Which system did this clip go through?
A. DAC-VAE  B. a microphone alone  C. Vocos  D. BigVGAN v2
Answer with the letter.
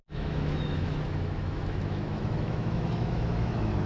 A